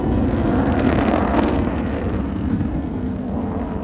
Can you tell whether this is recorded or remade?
remade